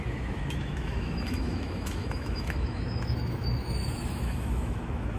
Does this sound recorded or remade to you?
remade